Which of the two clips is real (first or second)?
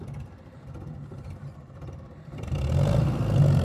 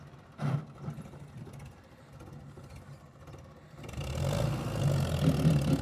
second